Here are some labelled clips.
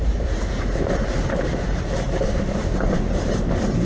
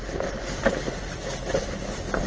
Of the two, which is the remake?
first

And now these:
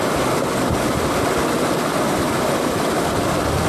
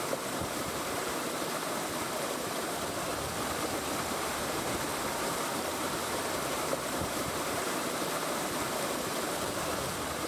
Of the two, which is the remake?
second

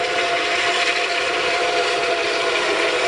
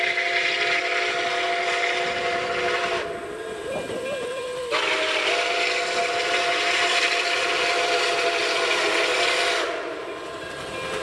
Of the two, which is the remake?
first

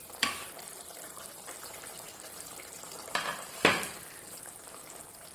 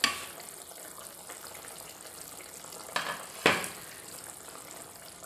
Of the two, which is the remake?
first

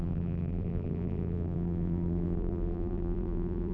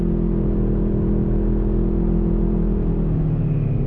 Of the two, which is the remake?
first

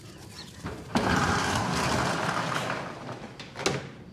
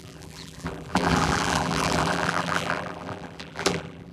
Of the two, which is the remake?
second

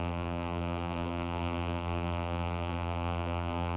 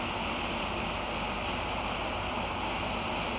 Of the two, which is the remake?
first